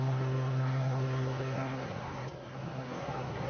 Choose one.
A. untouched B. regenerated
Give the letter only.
B